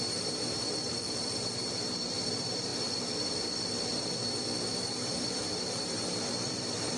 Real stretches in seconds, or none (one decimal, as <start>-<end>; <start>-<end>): 2.7-4.7